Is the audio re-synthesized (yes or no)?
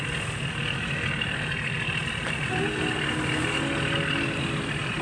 no